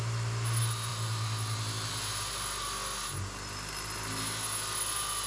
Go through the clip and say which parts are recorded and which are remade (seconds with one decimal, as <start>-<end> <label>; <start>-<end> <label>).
0.0-5.3 recorded